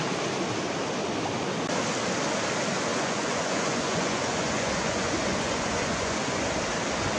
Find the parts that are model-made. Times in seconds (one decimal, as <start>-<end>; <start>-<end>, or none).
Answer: 2.9-6.5